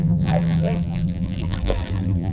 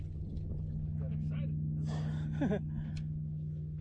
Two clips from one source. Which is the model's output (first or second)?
first